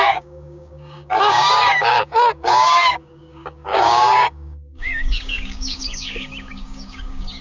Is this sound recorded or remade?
remade